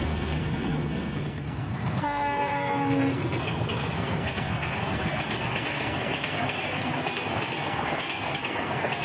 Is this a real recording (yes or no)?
no